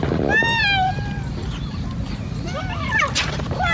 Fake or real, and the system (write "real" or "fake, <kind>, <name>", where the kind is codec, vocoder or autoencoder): real